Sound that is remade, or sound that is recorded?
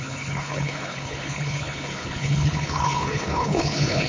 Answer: remade